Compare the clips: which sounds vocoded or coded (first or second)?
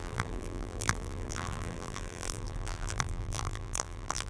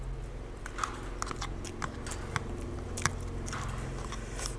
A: first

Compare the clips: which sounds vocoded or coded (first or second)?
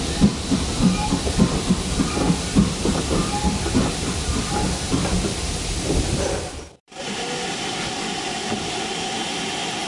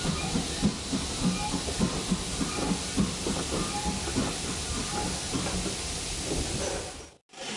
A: first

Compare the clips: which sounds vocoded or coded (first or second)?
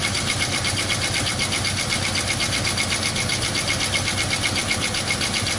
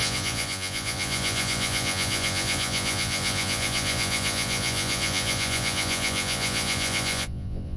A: second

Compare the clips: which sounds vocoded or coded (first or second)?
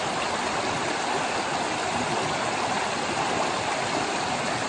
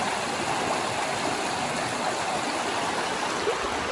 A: first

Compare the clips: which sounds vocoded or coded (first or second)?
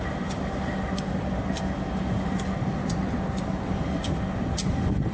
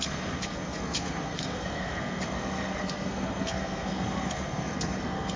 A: second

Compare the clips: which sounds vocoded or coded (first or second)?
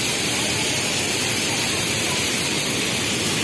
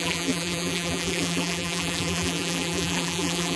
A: second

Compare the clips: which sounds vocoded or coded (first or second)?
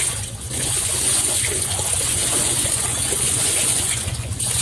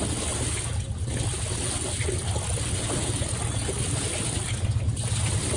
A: first